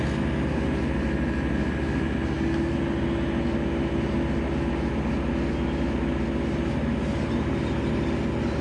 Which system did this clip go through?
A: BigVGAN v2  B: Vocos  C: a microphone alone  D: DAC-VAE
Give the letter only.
C